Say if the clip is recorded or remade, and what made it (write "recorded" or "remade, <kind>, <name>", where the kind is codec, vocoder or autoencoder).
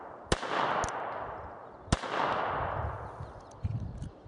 recorded